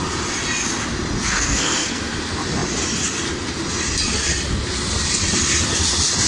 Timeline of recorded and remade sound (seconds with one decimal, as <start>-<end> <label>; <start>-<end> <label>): 0.0-1.2 recorded; 1.2-2.0 remade; 2.0-6.3 recorded